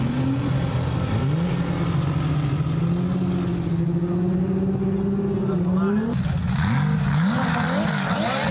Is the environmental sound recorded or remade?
recorded